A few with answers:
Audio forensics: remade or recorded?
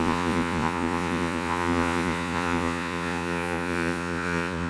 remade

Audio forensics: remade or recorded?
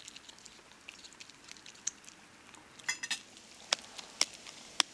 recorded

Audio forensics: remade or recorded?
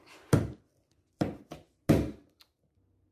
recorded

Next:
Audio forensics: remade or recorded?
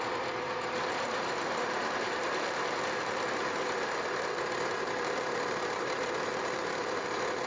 remade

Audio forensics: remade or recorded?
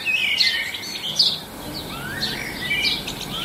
recorded